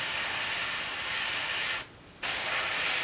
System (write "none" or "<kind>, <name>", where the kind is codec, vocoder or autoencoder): none